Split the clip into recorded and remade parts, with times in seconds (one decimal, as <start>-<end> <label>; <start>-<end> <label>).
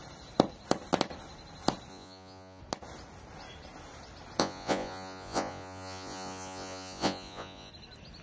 0.0-1.9 recorded; 1.9-2.6 remade; 2.6-4.4 recorded; 4.4-7.7 remade; 7.7-8.2 recorded